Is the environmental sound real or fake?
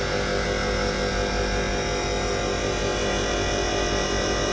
real